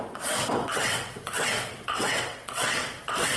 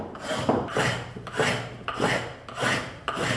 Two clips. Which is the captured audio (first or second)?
second